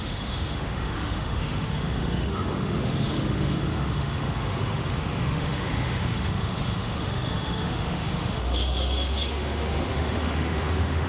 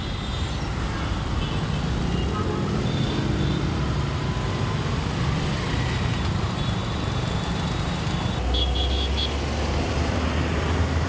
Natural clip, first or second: second